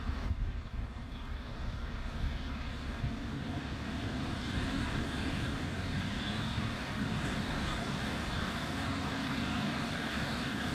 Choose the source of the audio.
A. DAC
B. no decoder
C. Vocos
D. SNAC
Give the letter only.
A